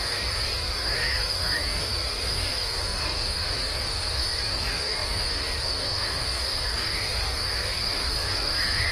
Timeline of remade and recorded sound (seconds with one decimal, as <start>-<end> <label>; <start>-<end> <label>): 0.0-8.9 remade